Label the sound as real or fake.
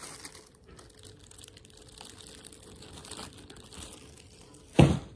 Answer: real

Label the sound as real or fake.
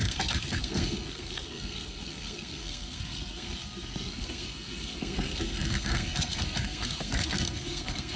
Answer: fake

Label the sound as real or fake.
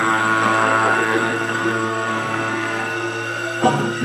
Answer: fake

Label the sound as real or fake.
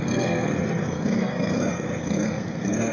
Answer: fake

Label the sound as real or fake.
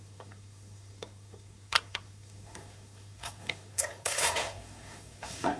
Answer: fake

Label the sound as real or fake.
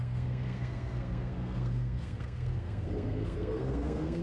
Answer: fake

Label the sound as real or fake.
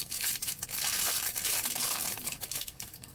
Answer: fake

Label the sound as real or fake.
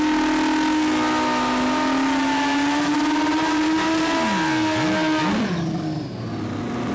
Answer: real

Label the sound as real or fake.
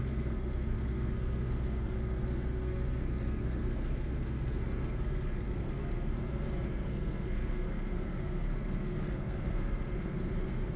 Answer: fake